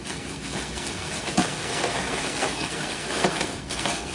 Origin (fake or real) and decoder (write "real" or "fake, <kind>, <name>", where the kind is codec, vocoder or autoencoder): fake, codec, SNAC